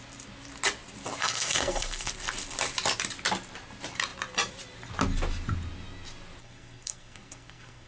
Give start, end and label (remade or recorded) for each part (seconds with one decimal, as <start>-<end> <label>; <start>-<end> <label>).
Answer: 0.0-1.2 recorded; 1.2-2.1 remade; 2.1-6.4 recorded; 6.4-7.9 remade